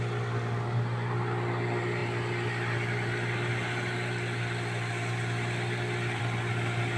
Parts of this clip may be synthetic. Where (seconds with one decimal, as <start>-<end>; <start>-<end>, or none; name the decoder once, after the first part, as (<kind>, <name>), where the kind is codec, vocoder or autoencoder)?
none